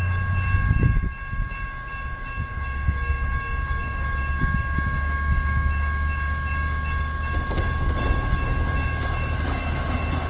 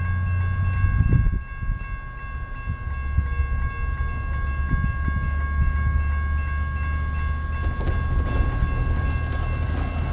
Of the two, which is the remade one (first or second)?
first